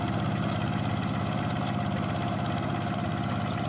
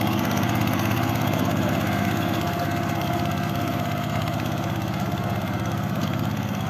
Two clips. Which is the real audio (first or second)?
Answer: first